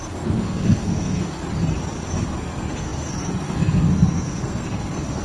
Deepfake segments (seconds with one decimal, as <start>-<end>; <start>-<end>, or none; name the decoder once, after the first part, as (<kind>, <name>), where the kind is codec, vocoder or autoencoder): 0.0-1.4 (codec, SNAC); 2.1-5.2